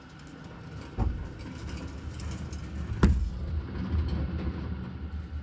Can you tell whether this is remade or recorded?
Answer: recorded